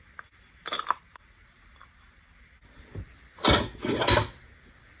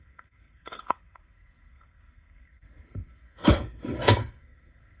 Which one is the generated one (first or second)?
second